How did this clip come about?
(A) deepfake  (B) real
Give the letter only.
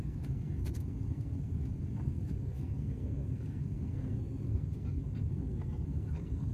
A